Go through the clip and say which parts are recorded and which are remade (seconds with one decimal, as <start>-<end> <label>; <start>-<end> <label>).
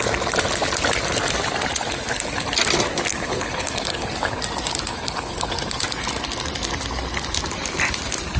0.0-3.1 recorded; 3.1-4.4 remade; 4.4-4.9 recorded; 4.9-5.5 remade; 5.5-8.4 recorded